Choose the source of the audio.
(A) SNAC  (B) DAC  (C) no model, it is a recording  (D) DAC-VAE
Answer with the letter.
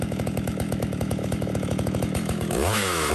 D